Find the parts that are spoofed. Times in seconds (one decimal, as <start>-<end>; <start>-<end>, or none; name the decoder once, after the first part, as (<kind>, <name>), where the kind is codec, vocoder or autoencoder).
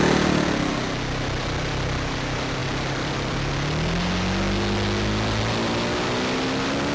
none